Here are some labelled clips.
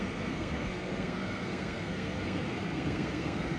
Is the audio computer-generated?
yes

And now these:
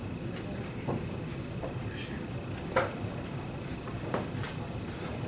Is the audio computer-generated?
no